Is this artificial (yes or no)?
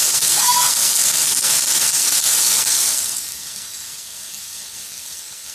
yes